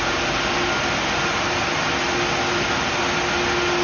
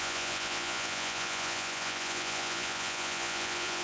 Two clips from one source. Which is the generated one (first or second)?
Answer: second